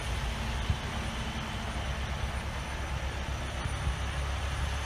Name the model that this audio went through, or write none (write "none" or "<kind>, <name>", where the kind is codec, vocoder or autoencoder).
none